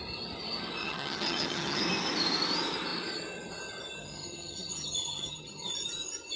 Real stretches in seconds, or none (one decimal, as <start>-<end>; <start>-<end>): 0.0-0.8; 1.8-4.0; 5.7-6.4